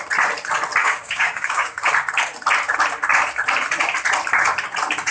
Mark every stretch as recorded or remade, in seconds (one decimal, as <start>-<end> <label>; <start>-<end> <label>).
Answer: 0.0-0.8 recorded; 0.8-1.9 remade; 1.9-5.1 recorded